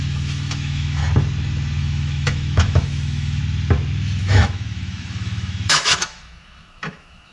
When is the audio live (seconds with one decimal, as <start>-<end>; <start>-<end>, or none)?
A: 1.0-1.8; 3.4-4.2